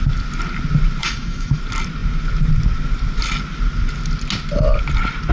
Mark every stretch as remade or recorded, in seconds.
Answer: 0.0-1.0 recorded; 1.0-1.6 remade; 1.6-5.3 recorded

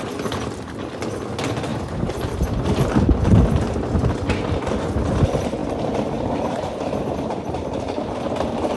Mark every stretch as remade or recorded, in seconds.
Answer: 0.0-1.7 recorded; 1.7-3.0 remade; 3.0-5.6 recorded; 5.6-7.6 remade; 7.6-8.8 recorded

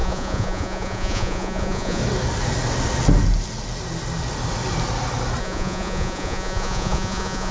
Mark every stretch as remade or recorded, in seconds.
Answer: 0.0-2.0 remade; 2.0-5.4 recorded; 5.4-7.5 remade

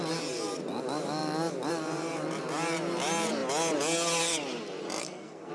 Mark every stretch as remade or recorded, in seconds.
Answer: 0.0-5.0 recorded; 5.0-5.5 remade

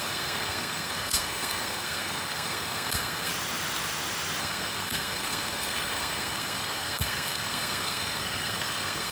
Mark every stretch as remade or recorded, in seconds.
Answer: 0.0-3.3 remade; 3.3-4.4 recorded; 4.4-9.1 remade